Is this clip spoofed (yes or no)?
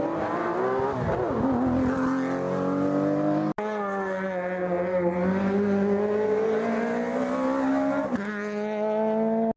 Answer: no